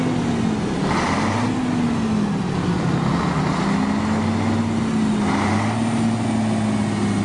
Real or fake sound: real